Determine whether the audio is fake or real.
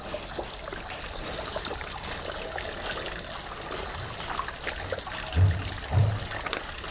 real